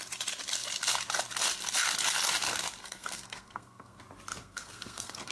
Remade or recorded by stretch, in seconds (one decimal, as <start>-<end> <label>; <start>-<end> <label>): 0.0-2.8 recorded; 2.8-4.0 remade; 4.0-4.4 recorded; 4.4-5.3 remade